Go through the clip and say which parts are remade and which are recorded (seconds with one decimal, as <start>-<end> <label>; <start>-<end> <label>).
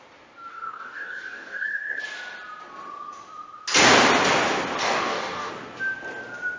0.0-0.5 recorded; 0.5-2.0 remade; 2.0-4.8 recorded; 4.8-5.5 remade; 5.5-6.6 recorded